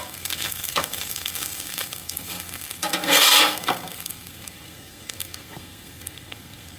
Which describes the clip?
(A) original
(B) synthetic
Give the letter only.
B